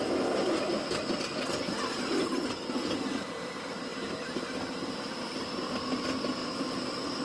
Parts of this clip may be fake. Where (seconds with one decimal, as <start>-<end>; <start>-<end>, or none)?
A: none